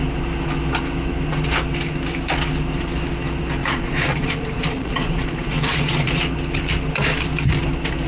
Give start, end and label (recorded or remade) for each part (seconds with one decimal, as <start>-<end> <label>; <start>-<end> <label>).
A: 0.0-3.6 recorded; 3.6-6.2 remade; 6.2-8.1 recorded